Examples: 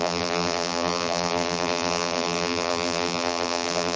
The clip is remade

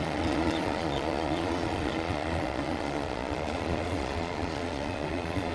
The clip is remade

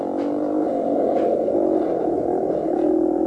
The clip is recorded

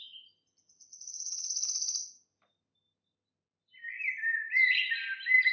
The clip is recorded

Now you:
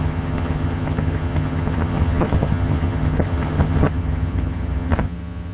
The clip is remade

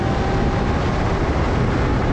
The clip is recorded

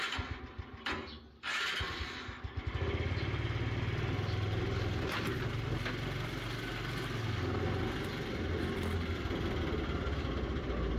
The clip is recorded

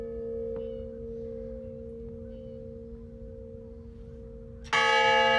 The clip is recorded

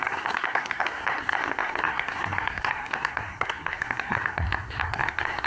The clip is remade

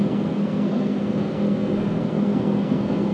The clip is remade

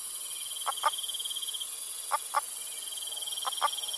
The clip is recorded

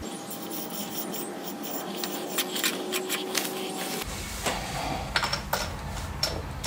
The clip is recorded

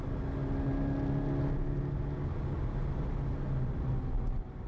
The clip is recorded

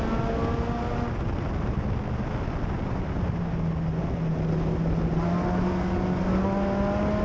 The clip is recorded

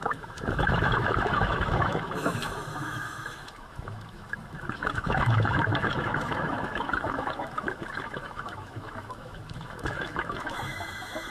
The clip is remade